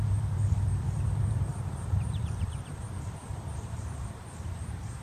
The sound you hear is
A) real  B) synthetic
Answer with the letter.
B